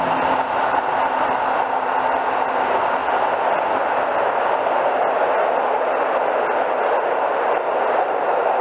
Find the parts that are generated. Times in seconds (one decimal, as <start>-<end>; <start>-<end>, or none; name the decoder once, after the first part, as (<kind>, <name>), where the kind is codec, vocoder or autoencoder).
none